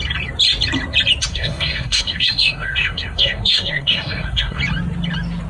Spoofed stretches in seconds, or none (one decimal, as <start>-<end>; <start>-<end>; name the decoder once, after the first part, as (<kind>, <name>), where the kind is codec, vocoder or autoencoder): 1.3-4.6 (codec, SNAC)